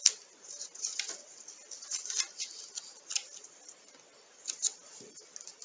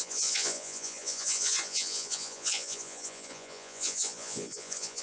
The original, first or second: first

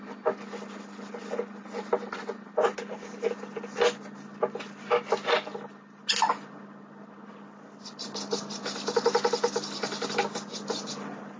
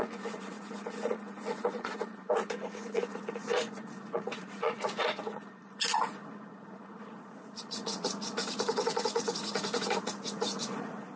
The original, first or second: first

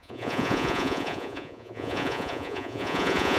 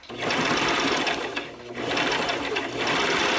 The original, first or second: second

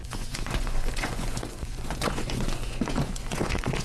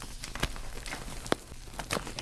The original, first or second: second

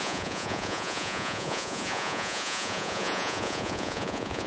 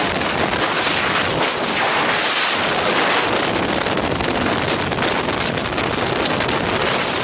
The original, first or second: second